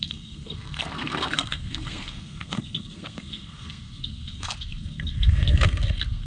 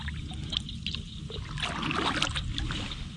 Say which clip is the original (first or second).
second